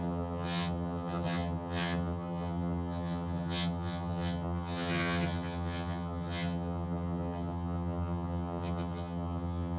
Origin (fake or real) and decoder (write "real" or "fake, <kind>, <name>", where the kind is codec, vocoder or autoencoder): fake, vocoder, HiFi-GAN